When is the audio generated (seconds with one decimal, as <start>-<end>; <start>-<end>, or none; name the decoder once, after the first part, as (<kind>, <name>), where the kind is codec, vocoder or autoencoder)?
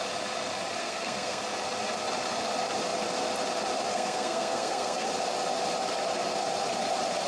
0.8-1.4 (codec, SNAC); 3.9-5.1